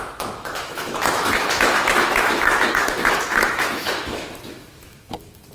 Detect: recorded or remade remade